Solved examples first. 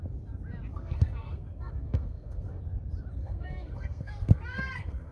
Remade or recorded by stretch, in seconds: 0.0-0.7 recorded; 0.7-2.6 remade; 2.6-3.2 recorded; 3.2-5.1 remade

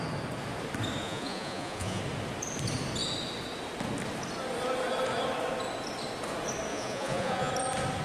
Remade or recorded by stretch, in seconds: 0.0-1.0 recorded; 1.0-2.0 remade; 2.0-6.7 recorded; 6.7-7.5 remade; 7.5-8.0 recorded

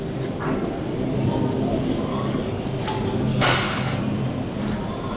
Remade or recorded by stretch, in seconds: 0.0-2.1 recorded; 2.1-2.6 remade; 2.6-3.3 recorded; 3.3-4.0 remade; 4.0-5.2 recorded

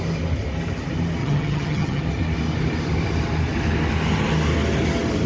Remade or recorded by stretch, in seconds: 0.0-1.2 recorded; 1.2-2.0 remade; 2.0-5.3 recorded

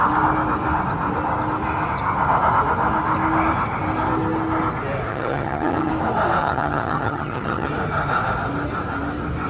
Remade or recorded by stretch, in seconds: 0.0-5.1 recorded; 5.1-5.9 remade; 5.9-6.4 recorded; 6.4-7.7 remade; 7.7-9.5 recorded

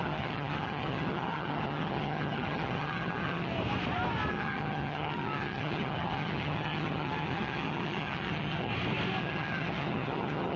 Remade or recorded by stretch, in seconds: 0.0-3.5 remade; 3.5-4.3 recorded; 4.3-8.7 remade; 8.7-9.2 recorded; 9.2-10.6 remade

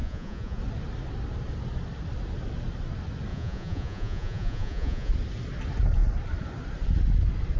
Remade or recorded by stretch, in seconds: 0.0-0.6 remade; 0.6-3.3 recorded; 3.3-5.1 remade; 5.1-7.6 recorded